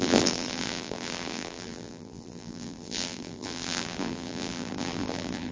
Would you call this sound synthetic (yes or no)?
yes